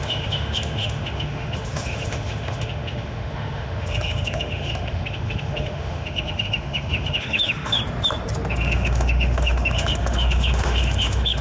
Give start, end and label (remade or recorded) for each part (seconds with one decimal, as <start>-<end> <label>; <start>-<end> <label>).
0.0-7.8 remade; 7.8-8.5 recorded; 8.5-11.4 remade